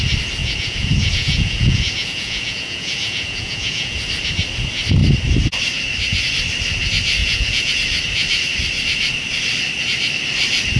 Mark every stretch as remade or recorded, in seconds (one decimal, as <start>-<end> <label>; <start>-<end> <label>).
0.0-0.4 recorded; 0.4-4.0 remade; 4.0-7.2 recorded; 7.2-7.7 remade; 7.7-10.8 recorded